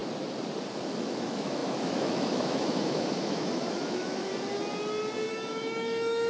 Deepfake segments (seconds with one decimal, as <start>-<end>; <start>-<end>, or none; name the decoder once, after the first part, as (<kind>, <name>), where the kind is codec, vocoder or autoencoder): 0.7-4.3 (autoencoder, DAC-VAE); 5.3-6.3